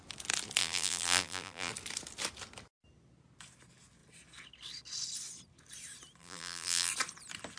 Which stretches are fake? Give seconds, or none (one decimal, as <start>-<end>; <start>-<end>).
0.6-1.7; 6.2-6.9